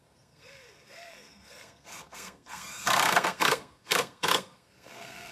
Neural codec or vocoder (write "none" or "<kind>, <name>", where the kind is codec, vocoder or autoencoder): codec, SNAC